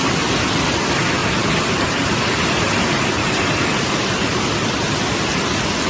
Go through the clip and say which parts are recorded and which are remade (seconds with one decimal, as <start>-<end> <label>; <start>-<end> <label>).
0.0-1.2 recorded; 1.2-2.0 remade; 2.0-4.3 recorded; 4.3-5.2 remade; 5.2-5.9 recorded

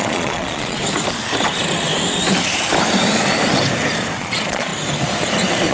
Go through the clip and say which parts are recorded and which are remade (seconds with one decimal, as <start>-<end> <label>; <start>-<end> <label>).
0.0-0.8 remade; 0.8-4.2 recorded; 4.2-4.7 remade; 4.7-5.7 recorded

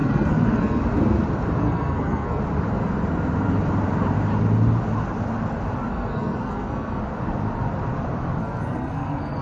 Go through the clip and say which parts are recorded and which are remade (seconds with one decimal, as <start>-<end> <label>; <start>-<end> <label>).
0.0-0.8 remade; 0.8-1.6 recorded; 1.6-2.4 remade; 2.4-5.9 recorded; 5.9-7.0 remade; 7.0-8.4 recorded; 8.4-9.4 remade

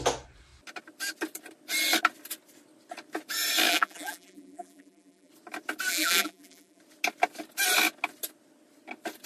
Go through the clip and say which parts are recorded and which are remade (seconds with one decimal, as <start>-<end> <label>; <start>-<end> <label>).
0.0-3.7 recorded; 3.7-5.3 remade; 5.3-5.9 recorded; 5.9-6.8 remade; 6.8-9.3 recorded